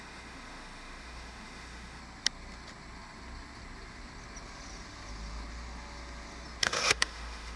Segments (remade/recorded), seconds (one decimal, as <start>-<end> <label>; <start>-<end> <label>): 0.0-2.0 remade; 2.0-6.6 recorded; 6.6-7.6 remade